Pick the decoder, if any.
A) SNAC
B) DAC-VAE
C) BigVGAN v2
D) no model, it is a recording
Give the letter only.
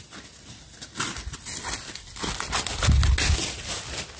D